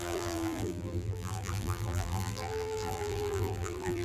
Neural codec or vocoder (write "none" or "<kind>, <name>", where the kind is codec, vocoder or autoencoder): vocoder, BigVGAN v2